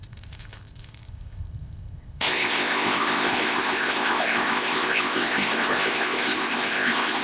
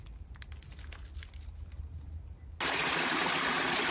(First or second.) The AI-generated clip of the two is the first